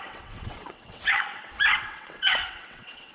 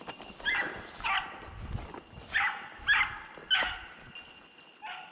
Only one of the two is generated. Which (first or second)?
first